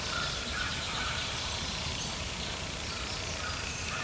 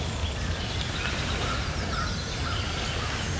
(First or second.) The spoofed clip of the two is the first